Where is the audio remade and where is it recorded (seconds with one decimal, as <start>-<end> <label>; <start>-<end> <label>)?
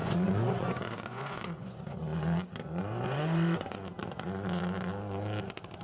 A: 0.0-2.0 remade; 2.0-2.8 recorded; 2.8-4.6 remade; 4.6-5.8 recorded